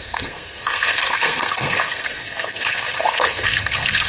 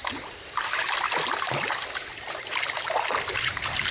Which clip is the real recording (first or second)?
second